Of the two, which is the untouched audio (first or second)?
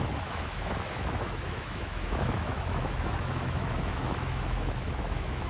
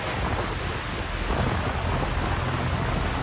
second